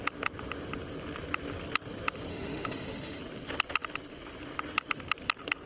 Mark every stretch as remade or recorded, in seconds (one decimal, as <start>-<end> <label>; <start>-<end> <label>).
0.0-2.3 recorded; 2.3-3.2 remade; 3.2-5.7 recorded